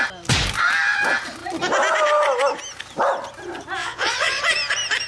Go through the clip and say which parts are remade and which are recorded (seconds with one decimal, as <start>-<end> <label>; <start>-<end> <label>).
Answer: 0.0-3.8 recorded; 3.8-4.4 remade; 4.4-5.1 recorded